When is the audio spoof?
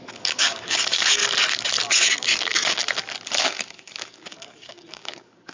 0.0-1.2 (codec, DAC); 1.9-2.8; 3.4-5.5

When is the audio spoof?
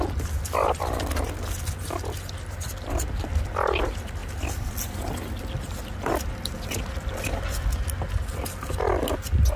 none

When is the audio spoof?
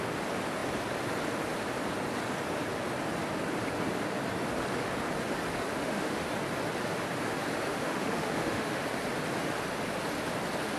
5.7-6.3 (autoencoder, DAC-VAE); 7.7-8.8